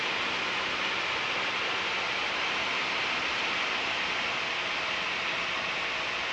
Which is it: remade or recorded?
recorded